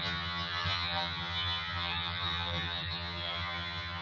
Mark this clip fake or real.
fake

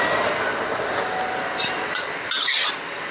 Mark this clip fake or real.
real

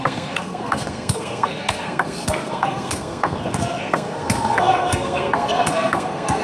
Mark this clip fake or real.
fake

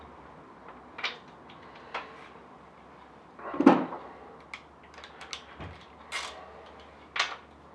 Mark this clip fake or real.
real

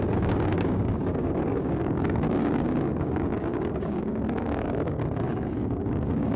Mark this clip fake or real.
fake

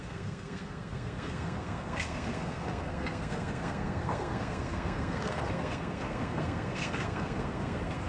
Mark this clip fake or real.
fake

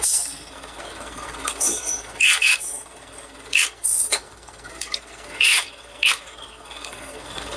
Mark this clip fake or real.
fake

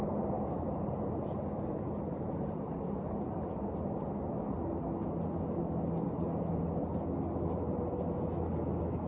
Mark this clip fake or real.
real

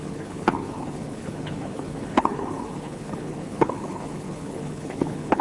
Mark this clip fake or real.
fake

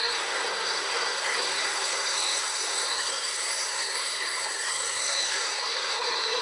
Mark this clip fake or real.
fake